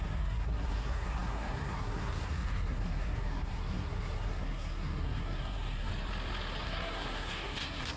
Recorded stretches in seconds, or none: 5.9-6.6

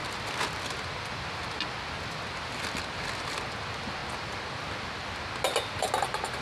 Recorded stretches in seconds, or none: 0.0-6.4

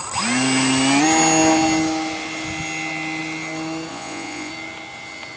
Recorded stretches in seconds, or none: 0.0-3.9; 4.5-5.4

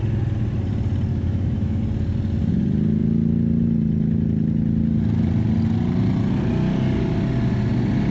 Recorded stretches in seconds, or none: 0.0-1.1; 1.8-8.1

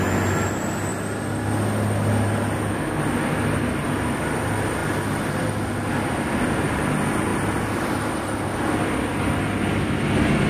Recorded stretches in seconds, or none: 0.0-4.8; 5.4-7.3; 8.1-10.5

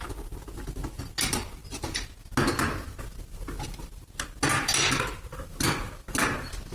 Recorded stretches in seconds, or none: 0.0-6.7